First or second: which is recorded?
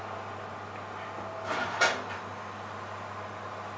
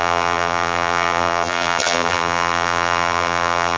first